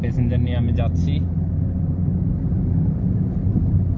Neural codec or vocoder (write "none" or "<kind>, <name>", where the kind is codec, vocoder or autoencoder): none